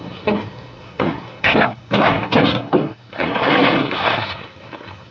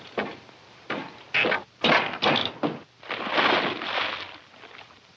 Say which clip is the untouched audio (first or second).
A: second